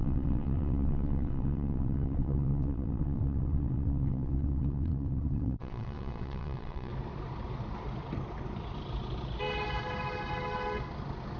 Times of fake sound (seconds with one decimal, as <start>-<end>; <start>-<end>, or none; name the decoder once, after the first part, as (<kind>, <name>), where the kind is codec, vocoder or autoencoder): 0.0-6.9 (vocoder, WaveNeXt)